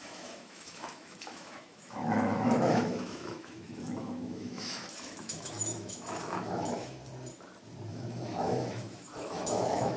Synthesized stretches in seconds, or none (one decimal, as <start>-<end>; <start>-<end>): 0.0-7.0; 7.9-10.0